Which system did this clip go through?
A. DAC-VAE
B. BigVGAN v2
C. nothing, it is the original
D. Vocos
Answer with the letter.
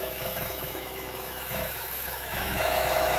A